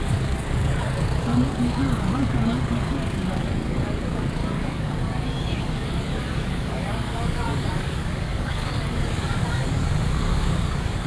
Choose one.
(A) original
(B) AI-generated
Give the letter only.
B